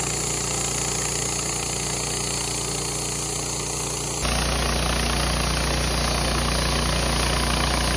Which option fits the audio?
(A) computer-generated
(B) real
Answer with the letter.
B